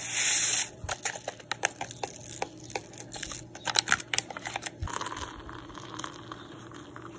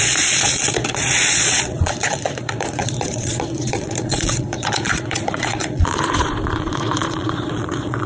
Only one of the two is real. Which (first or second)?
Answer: first